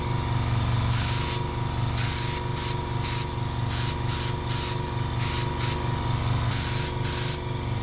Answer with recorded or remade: recorded